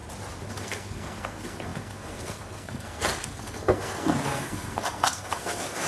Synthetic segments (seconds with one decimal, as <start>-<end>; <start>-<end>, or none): 0.5-5.9

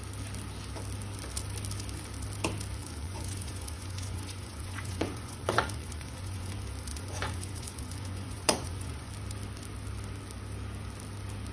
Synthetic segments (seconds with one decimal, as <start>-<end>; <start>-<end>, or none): 2.8-6.5; 6.9-9.1

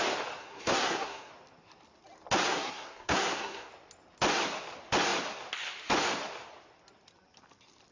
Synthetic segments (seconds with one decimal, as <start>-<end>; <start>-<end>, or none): 0.4-1.3; 2.5-3.7

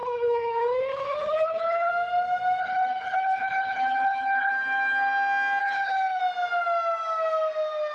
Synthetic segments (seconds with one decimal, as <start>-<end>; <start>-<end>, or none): 0.0-1.9; 2.6-4.5; 5.6-6.2

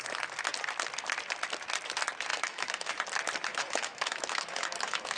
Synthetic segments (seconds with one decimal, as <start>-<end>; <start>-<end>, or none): 2.3-2.9; 3.5-5.2